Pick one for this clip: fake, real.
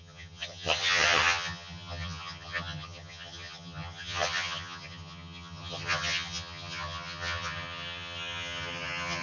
fake